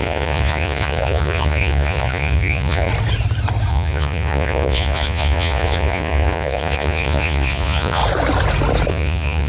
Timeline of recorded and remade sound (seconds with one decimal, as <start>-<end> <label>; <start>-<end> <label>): 0.0-2.9 remade; 2.9-3.7 recorded; 3.7-8.0 remade; 8.0-8.9 recorded; 8.9-9.5 remade